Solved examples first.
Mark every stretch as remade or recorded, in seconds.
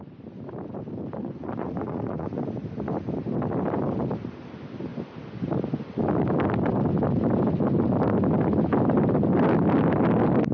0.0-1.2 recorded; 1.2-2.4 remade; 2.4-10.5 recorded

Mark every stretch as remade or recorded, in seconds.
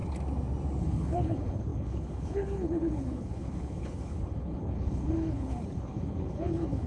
0.0-0.8 recorded; 0.8-6.9 remade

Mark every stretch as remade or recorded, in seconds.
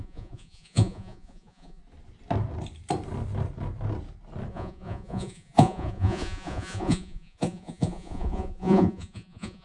0.0-1.8 remade; 1.8-4.5 recorded; 4.5-9.6 remade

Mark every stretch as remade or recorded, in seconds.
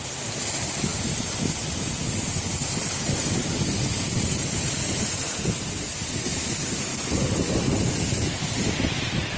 0.0-9.4 recorded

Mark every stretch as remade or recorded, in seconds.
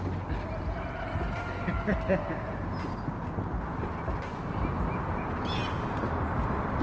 0.0-6.8 recorded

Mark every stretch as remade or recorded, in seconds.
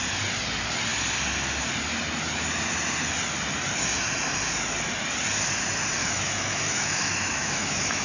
0.0-6.0 recorded; 6.0-8.0 remade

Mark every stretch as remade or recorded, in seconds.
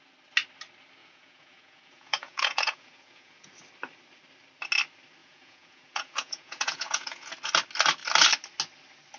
0.0-1.0 recorded; 1.0-3.5 remade; 3.5-5.2 recorded; 5.2-7.3 remade; 7.3-9.2 recorded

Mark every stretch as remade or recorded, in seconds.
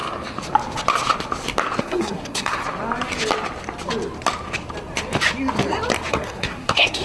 0.0-1.8 recorded; 1.8-2.6 remade; 2.6-6.1 recorded; 6.1-7.0 remade